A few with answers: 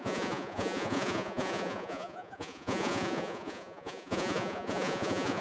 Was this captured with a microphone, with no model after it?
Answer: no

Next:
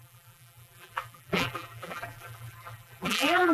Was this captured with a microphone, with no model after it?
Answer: no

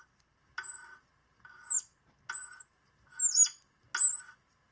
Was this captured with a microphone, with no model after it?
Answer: yes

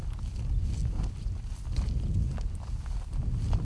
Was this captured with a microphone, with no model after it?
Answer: yes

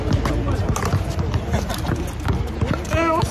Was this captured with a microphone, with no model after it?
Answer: yes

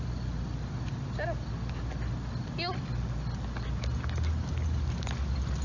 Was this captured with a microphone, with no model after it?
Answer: yes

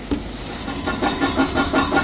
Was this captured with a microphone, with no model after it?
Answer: yes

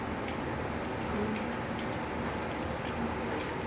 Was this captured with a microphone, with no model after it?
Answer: yes